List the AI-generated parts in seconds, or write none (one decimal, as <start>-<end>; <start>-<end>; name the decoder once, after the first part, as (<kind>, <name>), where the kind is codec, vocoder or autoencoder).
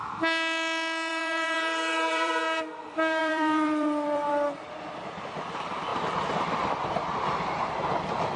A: 1.1-2.3 (vocoder, BigVGAN v2); 3.2-4.3; 5.9-6.7